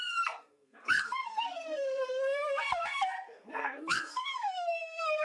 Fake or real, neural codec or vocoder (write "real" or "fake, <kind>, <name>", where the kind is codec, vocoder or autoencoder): fake, codec, SNAC